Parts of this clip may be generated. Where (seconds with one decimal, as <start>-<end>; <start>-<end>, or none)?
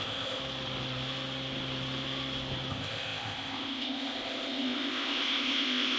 0.0-0.4; 2.7-6.0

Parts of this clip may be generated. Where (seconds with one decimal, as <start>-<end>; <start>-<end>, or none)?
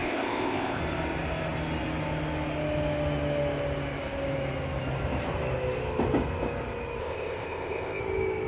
0.0-0.8; 7.0-8.0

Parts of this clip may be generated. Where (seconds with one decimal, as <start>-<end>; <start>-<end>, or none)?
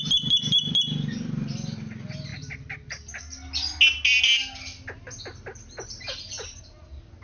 none